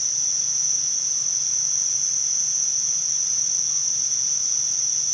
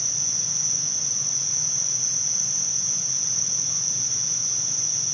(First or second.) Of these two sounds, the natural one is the first